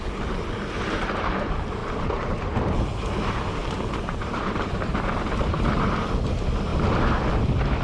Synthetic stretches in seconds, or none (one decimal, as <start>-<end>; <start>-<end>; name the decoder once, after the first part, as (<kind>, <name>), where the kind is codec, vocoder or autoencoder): 1.8-2.5 (vocoder, BigVGAN v2); 3.6-4.8